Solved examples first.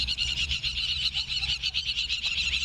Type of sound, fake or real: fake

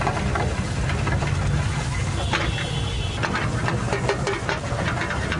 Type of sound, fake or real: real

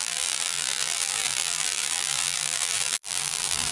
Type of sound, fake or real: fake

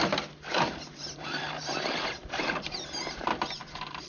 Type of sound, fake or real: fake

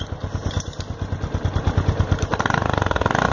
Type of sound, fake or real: real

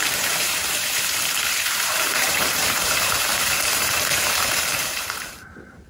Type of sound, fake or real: fake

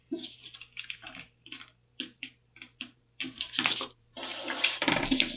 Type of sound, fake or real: fake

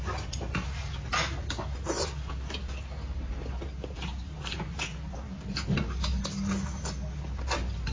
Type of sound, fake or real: real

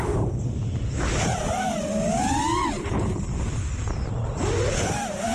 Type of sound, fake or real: real